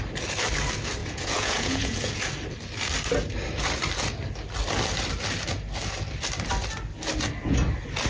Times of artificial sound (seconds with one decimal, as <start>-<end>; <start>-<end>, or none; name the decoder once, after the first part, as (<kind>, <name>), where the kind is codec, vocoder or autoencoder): 1.0-2.3 (vocoder, Vocos)